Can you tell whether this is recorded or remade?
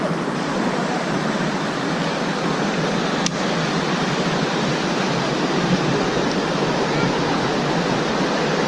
recorded